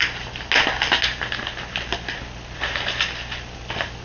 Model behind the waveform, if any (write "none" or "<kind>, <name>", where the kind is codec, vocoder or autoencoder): none